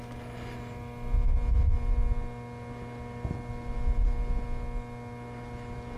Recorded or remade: recorded